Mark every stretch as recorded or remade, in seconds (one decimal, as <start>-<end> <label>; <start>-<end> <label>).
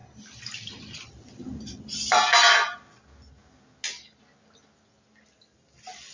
0.0-6.1 recorded